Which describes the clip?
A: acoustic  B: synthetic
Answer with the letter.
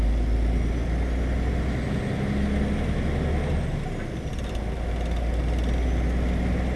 A